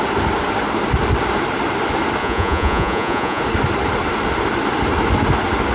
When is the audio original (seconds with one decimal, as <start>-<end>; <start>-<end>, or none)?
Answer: 0.0-2.2; 3.4-5.7